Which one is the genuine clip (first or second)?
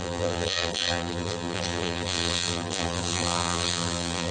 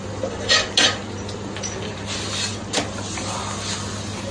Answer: second